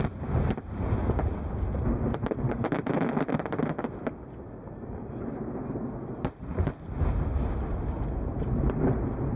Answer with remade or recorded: recorded